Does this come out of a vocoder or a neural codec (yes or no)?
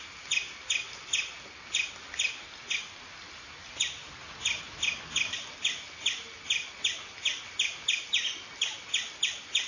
no